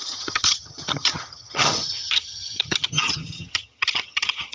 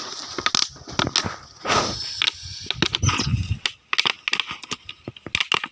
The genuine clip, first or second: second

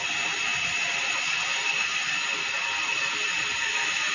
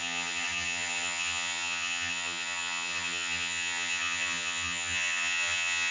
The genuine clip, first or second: first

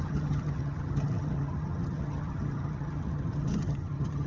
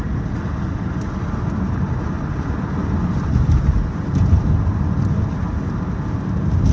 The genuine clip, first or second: second